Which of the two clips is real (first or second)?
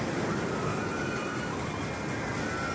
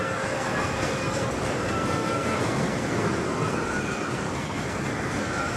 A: first